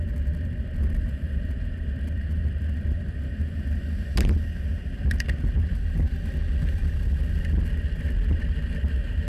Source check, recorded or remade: recorded